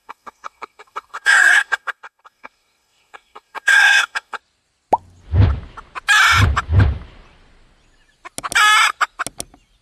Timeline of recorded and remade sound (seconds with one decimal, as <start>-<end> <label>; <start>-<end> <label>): 0.0-4.4 remade; 4.4-9.8 recorded